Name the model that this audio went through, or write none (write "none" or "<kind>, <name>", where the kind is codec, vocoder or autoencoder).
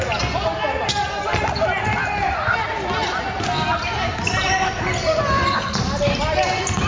none